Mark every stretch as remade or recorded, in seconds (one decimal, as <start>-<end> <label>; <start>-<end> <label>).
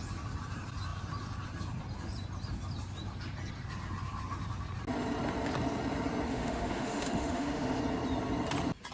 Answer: 0.0-6.3 recorded; 6.3-7.8 remade; 7.8-8.9 recorded